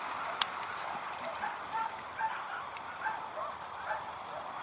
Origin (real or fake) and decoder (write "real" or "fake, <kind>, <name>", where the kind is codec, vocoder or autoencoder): real